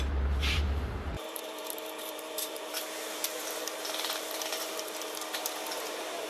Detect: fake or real fake